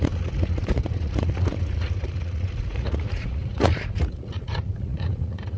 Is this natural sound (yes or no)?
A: no